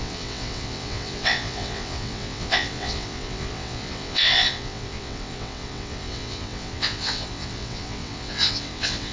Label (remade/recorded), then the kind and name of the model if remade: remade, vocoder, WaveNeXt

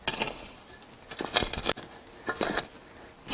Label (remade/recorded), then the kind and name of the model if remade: recorded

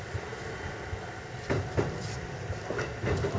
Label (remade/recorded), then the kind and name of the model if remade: recorded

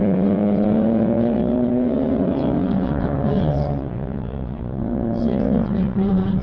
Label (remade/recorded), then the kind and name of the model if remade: remade, vocoder, WaveNeXt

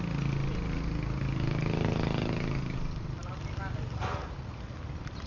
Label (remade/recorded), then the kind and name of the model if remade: recorded